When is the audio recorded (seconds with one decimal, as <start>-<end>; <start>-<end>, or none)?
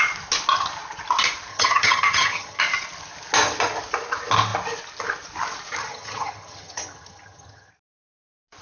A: 0.0-1.5; 2.6-5.8; 7.7-8.6